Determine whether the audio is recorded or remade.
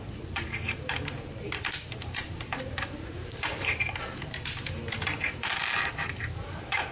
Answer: remade